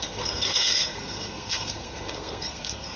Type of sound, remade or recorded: remade